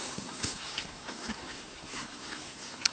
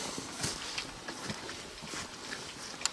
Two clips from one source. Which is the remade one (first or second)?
first